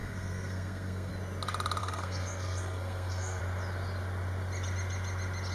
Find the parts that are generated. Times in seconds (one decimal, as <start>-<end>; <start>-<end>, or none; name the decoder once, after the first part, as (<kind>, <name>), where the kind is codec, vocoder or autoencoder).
0.0-1.1 (codec, SNAC); 1.8-3.4